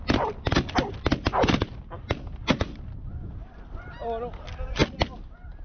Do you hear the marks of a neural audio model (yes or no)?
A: no